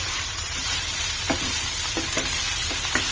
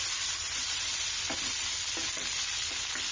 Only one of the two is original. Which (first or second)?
second